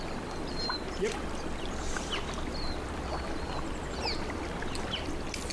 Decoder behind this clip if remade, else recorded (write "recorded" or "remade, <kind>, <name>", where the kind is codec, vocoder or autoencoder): recorded